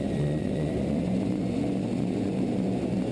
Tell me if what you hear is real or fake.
fake